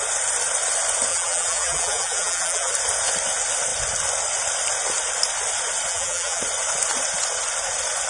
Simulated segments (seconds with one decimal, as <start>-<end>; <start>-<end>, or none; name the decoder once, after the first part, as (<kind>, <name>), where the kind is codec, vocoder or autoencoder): 1.1-2.7 (vocoder, BigVGAN v2); 5.9-6.4